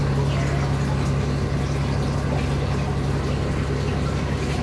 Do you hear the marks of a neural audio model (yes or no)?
no